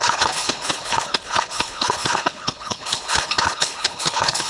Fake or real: fake